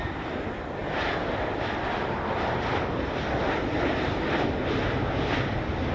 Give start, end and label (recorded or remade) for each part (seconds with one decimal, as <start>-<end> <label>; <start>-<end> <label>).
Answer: 0.0-5.9 recorded